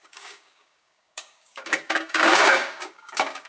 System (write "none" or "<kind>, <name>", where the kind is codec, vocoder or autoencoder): codec, DAC